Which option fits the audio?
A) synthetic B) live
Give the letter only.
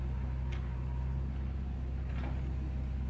A